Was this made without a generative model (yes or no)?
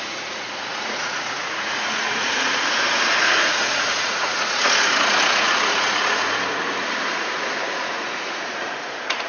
no